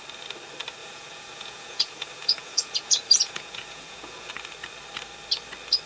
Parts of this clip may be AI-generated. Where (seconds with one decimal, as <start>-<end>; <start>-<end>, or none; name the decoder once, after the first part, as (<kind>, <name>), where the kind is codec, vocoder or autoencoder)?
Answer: 0.8-4.3 (vocoder, Vocos)